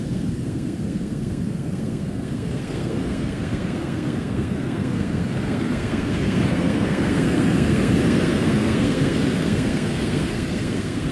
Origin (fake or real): fake